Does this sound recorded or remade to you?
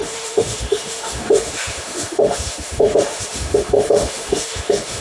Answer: remade